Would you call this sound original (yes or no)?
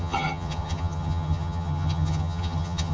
no